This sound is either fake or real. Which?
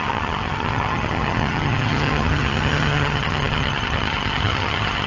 fake